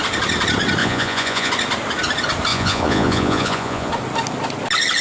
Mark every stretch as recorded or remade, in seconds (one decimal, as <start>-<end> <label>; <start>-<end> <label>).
0.0-0.8 recorded; 0.8-1.5 remade; 1.5-2.5 recorded; 2.5-3.9 remade; 3.9-5.0 recorded

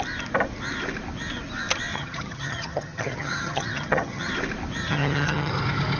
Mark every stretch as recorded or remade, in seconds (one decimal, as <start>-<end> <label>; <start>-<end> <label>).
0.0-1.9 recorded; 1.9-4.3 remade; 4.3-4.8 recorded; 4.8-5.5 remade; 5.5-6.0 recorded

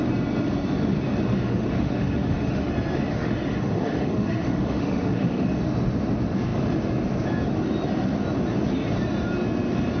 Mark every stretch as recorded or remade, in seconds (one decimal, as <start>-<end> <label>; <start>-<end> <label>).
0.0-1.3 recorded; 1.3-2.7 remade; 2.7-3.1 recorded; 3.1-5.6 remade; 5.6-10.0 recorded

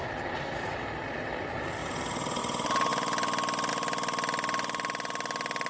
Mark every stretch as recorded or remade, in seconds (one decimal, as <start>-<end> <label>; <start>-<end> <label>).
0.0-0.8 remade; 0.8-1.8 recorded; 1.8-2.4 remade; 2.4-5.7 recorded

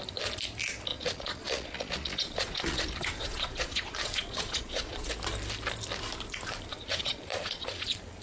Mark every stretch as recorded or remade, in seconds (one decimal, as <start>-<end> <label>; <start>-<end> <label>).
0.0-0.9 recorded; 0.9-5.1 remade; 5.1-6.7 recorded; 6.7-8.2 remade

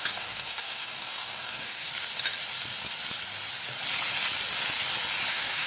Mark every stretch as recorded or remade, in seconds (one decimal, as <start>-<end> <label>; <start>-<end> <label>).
0.0-1.9 remade; 1.9-5.3 recorded; 5.3-5.7 remade

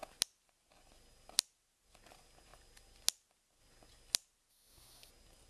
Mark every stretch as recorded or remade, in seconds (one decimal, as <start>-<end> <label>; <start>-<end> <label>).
0.0-4.5 recorded; 4.5-5.1 remade; 5.1-5.5 recorded

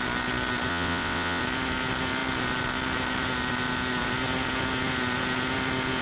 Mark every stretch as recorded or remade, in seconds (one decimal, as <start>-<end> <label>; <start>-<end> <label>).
0.0-0.7 recorded; 0.7-1.4 remade; 1.4-6.0 recorded